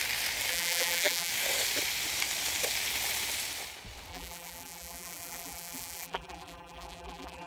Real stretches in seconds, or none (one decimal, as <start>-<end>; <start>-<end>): 0.0-0.5; 1.3-4.1